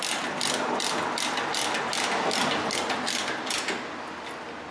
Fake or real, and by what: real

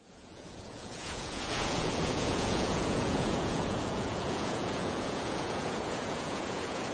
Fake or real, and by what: fake, vocoder, Vocos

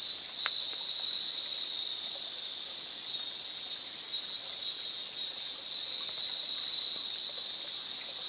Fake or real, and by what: real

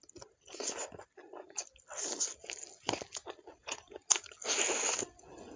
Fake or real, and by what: real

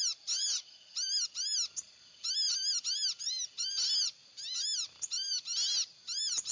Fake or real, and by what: real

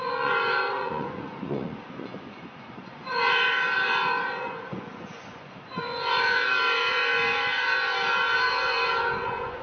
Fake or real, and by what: fake, vocoder, Vocos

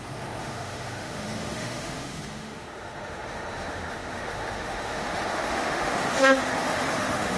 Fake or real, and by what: fake, autoencoder, DAC-VAE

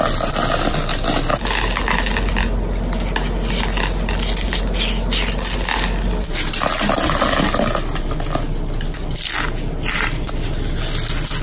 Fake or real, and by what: real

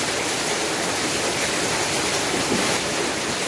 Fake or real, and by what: real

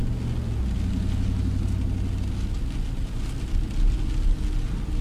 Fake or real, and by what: real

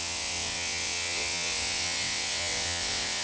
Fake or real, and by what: fake, vocoder, WaveNeXt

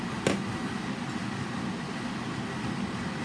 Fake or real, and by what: real